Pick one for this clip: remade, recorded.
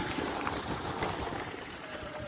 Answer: remade